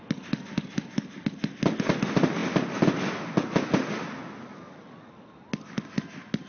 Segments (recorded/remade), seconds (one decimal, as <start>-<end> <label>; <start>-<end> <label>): 0.0-6.5 recorded